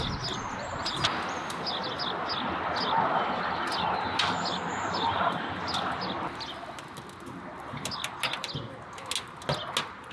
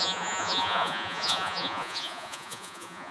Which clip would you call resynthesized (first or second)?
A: second